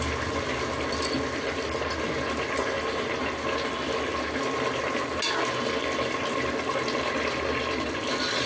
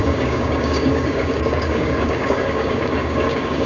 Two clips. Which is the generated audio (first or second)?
second